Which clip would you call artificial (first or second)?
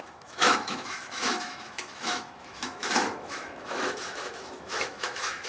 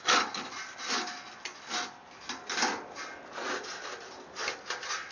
first